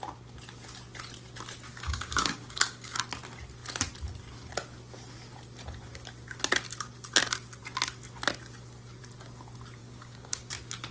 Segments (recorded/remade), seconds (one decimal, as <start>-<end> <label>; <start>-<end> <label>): 0.0-1.7 recorded; 1.7-3.0 remade; 3.0-9.8 recorded; 9.8-10.5 remade; 10.5-10.9 recorded